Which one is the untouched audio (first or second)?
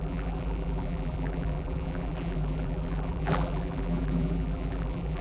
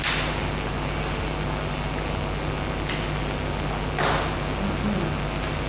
second